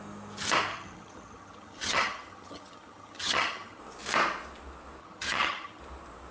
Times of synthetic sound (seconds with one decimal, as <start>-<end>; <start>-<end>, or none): 0.7-3.8; 5.0-5.8